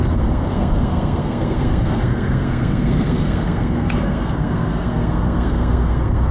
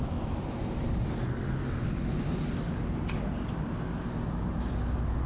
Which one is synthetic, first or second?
first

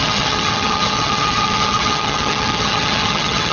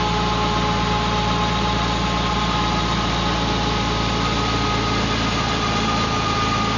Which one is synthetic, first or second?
first